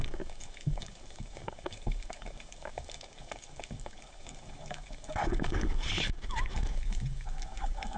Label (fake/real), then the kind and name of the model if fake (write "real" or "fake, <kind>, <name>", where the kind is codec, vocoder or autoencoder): fake, codec, DAC